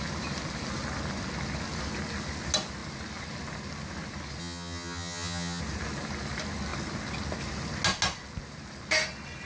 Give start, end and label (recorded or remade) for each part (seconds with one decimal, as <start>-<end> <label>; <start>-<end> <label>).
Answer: 0.0-4.4 recorded; 4.4-5.6 remade; 5.6-9.4 recorded